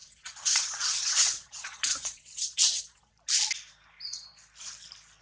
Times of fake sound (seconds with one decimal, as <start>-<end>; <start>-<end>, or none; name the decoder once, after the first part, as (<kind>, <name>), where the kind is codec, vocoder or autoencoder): 0.0-3.1 (vocoder, Vocos)